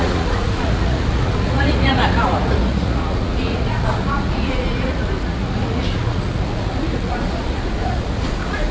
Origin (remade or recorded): remade